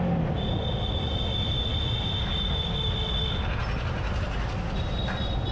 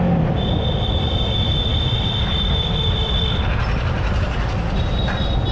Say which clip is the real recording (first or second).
first